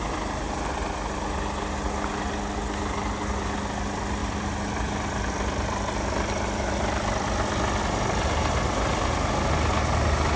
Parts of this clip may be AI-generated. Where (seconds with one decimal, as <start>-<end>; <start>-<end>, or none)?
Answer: 4.2-7.8